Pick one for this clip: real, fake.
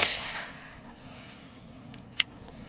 fake